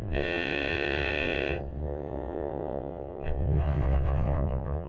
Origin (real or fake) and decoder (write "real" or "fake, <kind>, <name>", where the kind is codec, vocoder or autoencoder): fake, vocoder, WaveNeXt